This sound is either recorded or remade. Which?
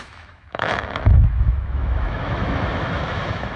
remade